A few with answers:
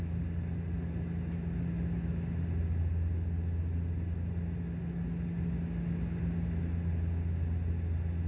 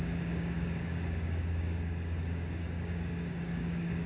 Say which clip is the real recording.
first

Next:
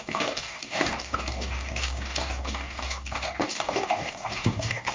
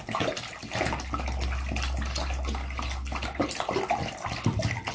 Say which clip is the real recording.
second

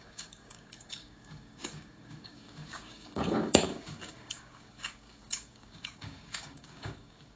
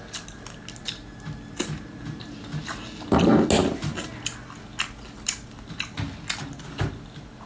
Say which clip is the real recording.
second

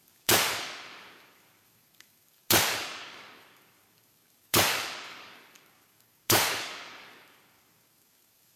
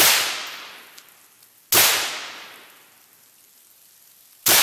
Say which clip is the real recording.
second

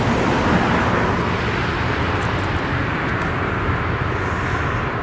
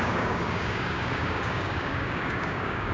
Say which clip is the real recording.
first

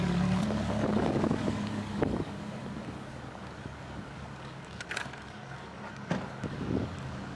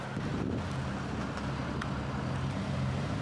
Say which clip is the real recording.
second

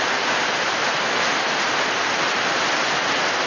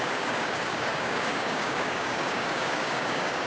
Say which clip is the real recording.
first